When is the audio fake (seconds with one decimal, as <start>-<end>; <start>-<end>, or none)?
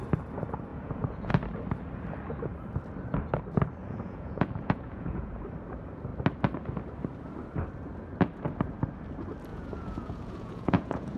0.7-1.3; 3.8-5.4; 9.5-11.2